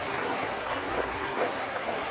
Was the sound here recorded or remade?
remade